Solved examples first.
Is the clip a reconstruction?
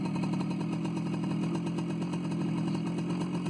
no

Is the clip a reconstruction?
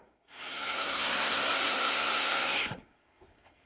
yes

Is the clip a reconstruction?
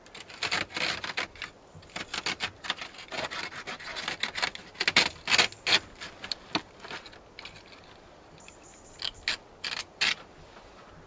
no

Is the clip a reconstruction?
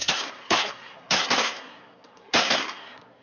yes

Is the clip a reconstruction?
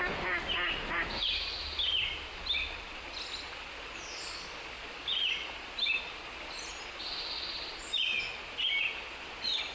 no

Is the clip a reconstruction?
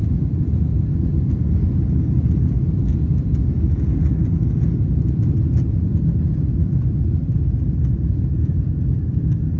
no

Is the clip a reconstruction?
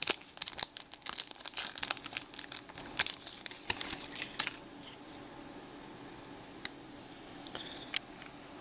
no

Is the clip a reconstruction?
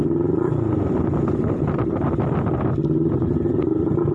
no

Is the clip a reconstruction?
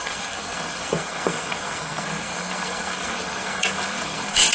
yes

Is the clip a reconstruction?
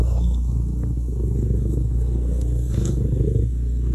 yes